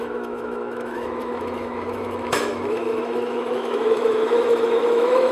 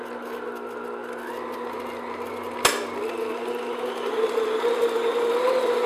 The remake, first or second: first